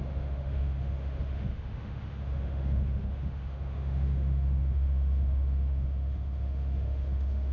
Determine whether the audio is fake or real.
fake